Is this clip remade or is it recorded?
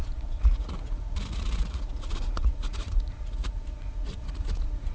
remade